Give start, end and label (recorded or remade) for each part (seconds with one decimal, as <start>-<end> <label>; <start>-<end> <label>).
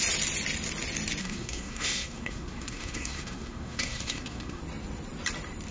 0.0-1.2 recorded; 1.2-4.6 remade; 4.6-5.7 recorded